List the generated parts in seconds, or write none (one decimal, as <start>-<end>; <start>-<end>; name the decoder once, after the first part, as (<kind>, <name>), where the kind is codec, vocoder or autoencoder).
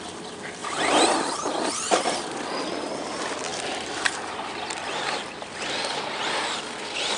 0.6-1.1 (vocoder, BigVGAN v2); 1.5-2.2; 3.5-6.6